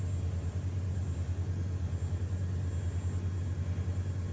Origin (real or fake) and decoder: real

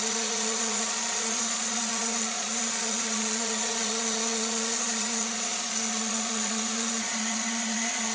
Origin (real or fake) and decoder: fake, vocoder, Vocos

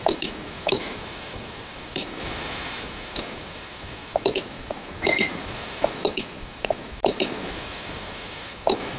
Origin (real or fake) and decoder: fake, autoencoder, DAC-VAE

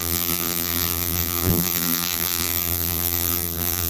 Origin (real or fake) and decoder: fake, vocoder, BigVGAN v2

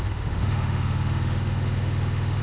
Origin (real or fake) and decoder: fake, autoencoder, DAC-VAE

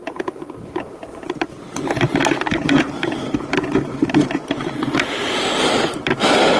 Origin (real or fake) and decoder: fake, vocoder, BigVGAN v2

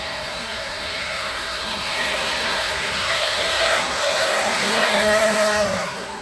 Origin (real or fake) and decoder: fake, codec, SNAC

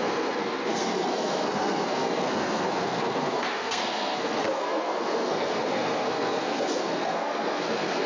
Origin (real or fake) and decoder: fake, codec, SNAC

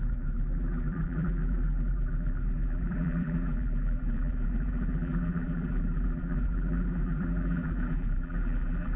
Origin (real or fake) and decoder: fake, vocoder, BigVGAN v2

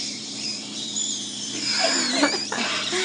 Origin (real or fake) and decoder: fake, vocoder, BigVGAN v2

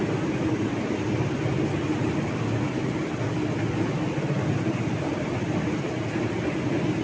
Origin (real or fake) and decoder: real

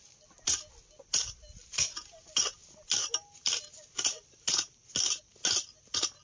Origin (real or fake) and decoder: real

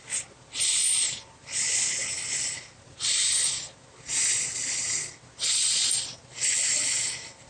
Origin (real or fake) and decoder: real